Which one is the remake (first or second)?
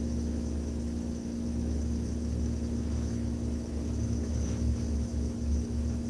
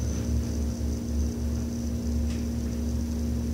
first